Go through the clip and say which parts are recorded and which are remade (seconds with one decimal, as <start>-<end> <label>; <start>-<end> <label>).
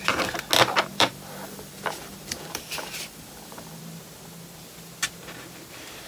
0.0-0.9 recorded; 0.9-3.8 remade; 3.8-6.1 recorded